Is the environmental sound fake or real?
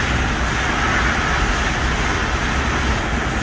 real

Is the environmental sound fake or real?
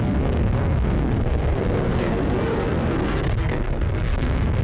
fake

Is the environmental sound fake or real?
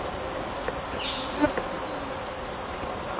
real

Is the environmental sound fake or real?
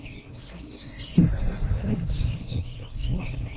fake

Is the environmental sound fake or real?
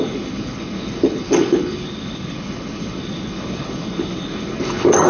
fake